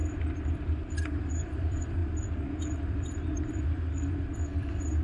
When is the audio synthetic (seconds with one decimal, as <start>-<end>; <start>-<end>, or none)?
0.0-2.0; 4.1-5.0